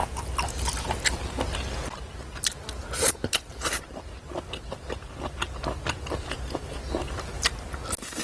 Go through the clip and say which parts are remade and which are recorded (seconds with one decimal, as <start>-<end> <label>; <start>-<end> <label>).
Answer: 0.0-8.2 recorded